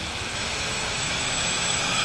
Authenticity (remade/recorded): remade